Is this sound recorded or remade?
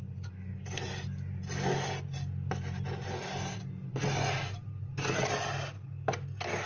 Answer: recorded